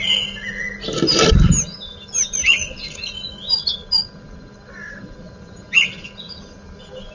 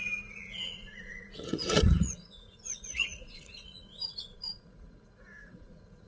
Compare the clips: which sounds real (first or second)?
first